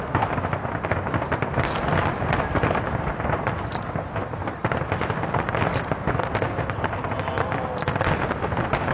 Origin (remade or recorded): recorded